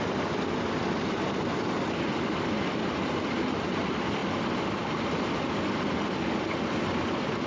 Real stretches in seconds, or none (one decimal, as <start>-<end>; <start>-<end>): 0.0-7.5